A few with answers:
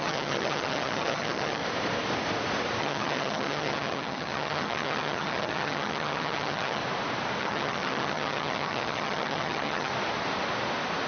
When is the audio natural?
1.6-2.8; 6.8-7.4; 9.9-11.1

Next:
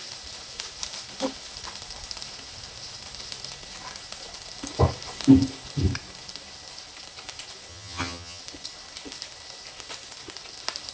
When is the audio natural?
0.0-7.7; 8.4-10.9

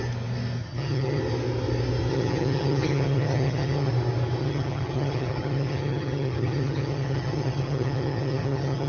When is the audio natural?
0.0-0.6; 1.2-2.1; 3.9-4.4